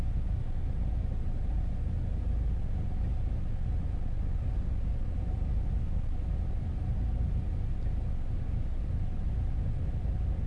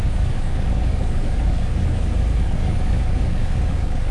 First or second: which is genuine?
first